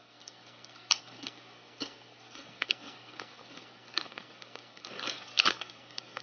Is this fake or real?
fake